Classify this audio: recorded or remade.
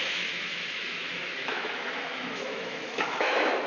remade